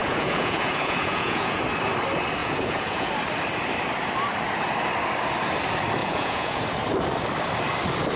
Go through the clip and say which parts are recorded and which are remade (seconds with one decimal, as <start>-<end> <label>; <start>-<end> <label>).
0.0-1.6 remade; 1.6-2.4 recorded; 2.4-3.1 remade; 3.1-6.0 recorded; 6.0-6.6 remade; 6.6-8.2 recorded